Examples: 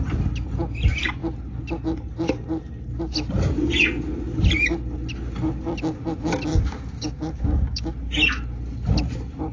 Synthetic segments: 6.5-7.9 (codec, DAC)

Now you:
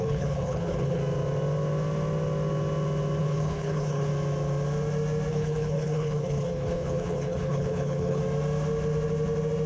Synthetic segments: 0.0-1.0 (codec, HILCodec); 3.2-4.1; 5.3-8.2